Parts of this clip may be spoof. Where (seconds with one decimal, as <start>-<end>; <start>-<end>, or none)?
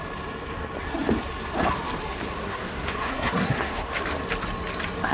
2.4-3.9